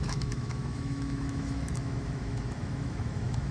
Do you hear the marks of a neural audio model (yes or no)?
yes